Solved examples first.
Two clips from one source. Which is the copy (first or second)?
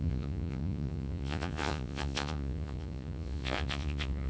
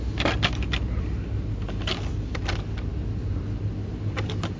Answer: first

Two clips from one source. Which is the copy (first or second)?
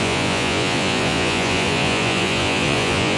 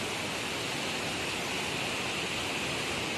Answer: first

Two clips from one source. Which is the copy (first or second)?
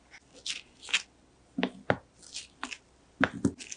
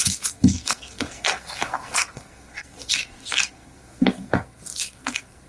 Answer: second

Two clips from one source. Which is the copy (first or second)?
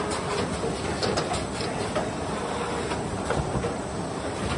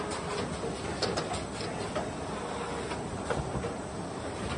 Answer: first